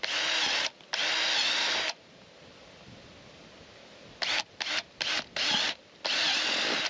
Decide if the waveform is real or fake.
real